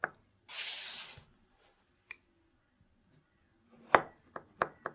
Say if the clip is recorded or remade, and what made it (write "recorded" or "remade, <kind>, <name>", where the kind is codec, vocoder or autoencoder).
recorded